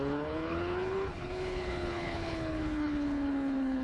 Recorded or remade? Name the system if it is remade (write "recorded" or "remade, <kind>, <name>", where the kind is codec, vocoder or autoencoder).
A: remade, codec, HILCodec